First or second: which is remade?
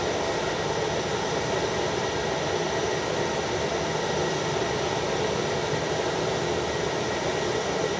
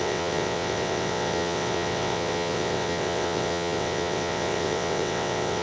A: second